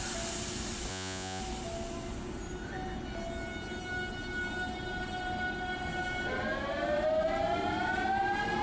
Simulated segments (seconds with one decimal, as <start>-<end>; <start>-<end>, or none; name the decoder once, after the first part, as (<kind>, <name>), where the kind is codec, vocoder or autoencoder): 0.9-1.4 (vocoder, Vocos)